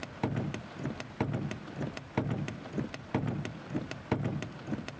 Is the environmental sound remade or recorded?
recorded